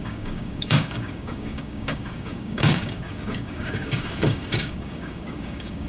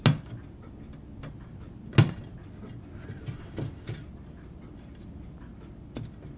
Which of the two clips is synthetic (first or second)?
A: first